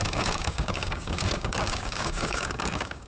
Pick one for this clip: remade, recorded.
remade